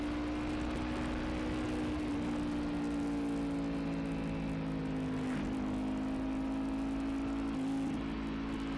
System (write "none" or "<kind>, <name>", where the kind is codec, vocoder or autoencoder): none